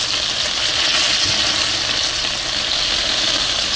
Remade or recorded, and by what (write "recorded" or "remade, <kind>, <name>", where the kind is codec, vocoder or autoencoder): recorded